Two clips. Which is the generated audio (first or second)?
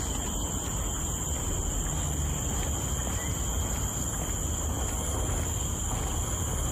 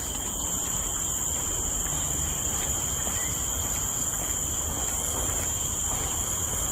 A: second